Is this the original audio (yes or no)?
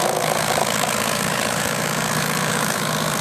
no